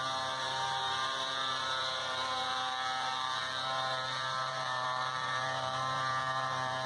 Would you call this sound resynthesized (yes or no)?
yes